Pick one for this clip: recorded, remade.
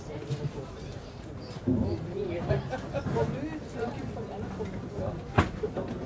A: recorded